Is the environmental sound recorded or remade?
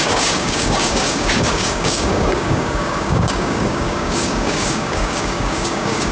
remade